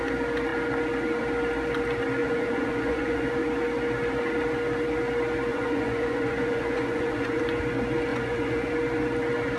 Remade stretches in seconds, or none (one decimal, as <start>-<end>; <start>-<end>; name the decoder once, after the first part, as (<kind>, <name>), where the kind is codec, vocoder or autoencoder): 2.2-3.3 (vocoder, Vocos); 5.5-7.4; 8.1-8.7

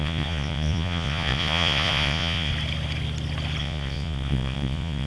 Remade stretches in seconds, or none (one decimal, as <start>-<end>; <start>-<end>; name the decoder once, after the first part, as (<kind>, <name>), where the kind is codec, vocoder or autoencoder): 0.0-2.5 (vocoder, Vocos); 3.6-5.1